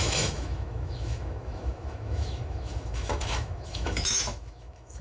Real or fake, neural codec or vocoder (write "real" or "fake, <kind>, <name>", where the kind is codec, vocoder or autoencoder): fake, autoencoder, DAC-VAE